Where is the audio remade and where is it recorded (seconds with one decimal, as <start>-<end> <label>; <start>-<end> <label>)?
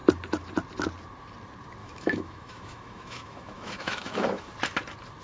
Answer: 0.0-1.8 recorded; 1.8-4.5 remade; 4.5-5.2 recorded